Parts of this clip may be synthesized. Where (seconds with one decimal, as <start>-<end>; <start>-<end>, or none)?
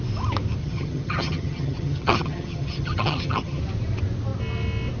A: 0.6-3.6